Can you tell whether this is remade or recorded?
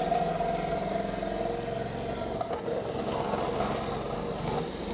recorded